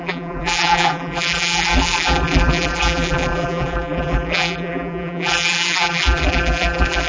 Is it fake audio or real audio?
fake